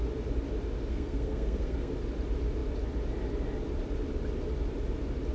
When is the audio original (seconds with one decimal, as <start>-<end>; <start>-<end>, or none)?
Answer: 0.0-0.9; 1.9-5.3